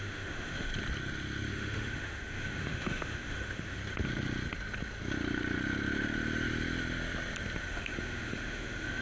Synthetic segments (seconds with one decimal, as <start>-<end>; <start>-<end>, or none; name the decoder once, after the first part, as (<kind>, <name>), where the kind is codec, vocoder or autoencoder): 0.0-0.7 (autoencoder, DAC-VAE); 1.5-3.8; 7.6-9.0